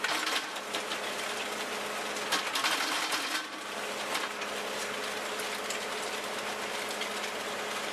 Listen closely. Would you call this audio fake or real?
real